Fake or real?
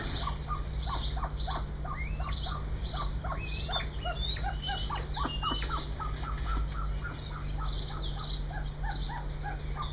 real